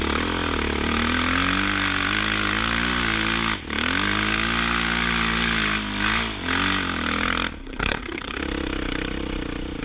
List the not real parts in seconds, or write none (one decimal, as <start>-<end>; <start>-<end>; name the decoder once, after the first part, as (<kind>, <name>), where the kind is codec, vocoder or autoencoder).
7.6-8.4 (codec, SNAC)